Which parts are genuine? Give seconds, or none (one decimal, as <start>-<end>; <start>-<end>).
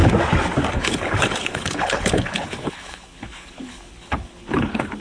0.0-0.7